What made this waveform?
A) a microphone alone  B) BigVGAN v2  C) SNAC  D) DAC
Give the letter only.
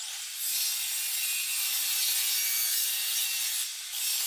A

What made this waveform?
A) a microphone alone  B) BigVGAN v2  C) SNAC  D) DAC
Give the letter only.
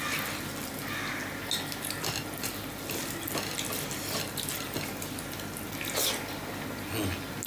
A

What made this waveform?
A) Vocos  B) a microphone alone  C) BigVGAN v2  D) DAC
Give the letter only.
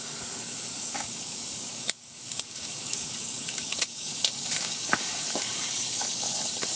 D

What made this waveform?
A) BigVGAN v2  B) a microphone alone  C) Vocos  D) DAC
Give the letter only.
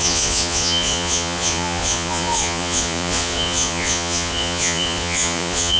C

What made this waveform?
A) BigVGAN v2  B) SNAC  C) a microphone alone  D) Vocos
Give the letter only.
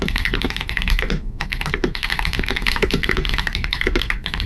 B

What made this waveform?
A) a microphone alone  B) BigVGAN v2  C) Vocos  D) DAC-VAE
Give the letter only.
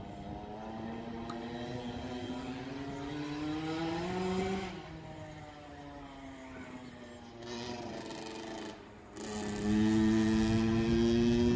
A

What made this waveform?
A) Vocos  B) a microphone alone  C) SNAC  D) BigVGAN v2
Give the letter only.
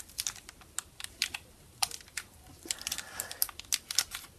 B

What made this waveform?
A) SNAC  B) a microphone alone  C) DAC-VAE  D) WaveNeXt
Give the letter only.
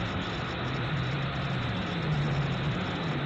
B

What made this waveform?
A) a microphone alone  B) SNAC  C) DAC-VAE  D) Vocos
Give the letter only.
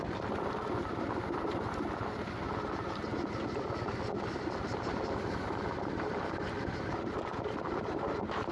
A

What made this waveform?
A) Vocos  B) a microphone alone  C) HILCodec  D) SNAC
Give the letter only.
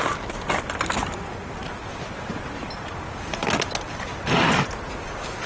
B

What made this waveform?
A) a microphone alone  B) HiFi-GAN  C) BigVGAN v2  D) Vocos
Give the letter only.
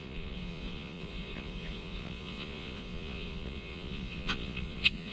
D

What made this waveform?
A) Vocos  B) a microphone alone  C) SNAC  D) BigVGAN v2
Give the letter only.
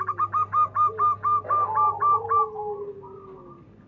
B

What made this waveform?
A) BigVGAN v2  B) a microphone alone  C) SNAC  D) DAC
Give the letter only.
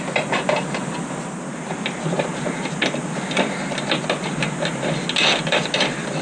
B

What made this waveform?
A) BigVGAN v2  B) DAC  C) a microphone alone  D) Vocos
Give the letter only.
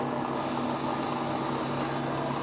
C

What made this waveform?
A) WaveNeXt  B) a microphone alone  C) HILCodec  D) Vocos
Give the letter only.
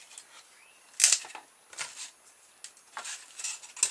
B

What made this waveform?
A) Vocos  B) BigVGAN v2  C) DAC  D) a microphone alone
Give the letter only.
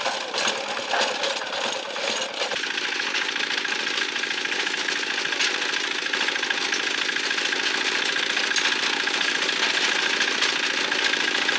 D